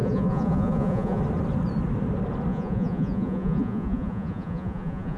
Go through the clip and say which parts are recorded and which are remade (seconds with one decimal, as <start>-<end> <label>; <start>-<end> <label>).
0.0-1.2 remade; 1.2-2.5 recorded; 2.5-5.2 remade